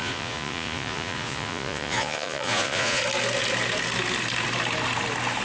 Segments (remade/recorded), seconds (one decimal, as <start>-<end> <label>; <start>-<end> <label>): 0.0-3.0 remade; 3.0-5.4 recorded